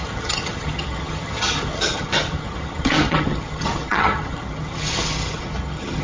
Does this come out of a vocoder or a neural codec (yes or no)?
yes